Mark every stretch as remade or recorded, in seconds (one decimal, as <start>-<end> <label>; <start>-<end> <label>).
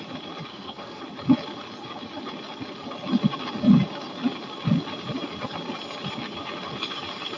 0.0-0.5 recorded; 0.5-1.0 remade; 1.0-7.4 recorded